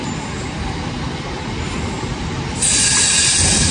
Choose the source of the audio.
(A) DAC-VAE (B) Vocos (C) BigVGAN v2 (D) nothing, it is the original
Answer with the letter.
D